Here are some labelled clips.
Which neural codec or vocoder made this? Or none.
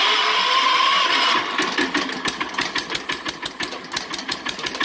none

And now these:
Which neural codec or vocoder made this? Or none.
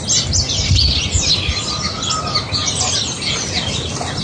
none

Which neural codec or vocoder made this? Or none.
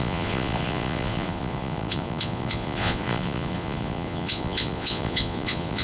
vocoder, Vocos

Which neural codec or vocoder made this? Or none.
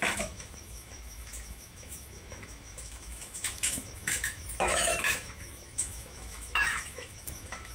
autoencoder, DAC-VAE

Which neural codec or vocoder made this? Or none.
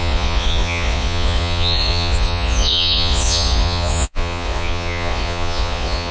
vocoder, Vocos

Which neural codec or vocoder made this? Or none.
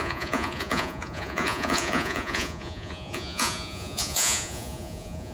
vocoder, Vocos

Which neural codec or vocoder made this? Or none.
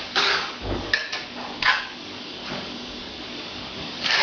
codec, DAC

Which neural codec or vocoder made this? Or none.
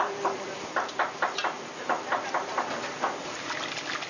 none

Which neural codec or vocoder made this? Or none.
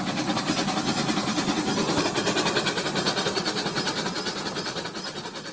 none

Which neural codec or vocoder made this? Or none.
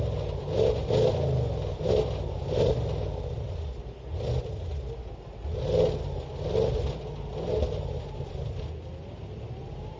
none